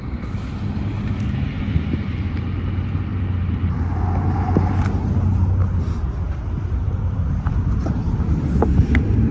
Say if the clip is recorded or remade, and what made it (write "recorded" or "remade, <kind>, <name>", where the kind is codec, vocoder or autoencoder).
recorded